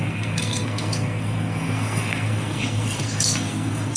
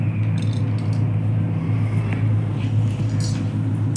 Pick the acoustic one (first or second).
second